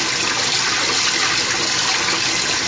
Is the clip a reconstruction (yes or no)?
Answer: no